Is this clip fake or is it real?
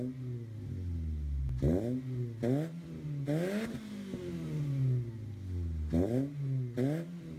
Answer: real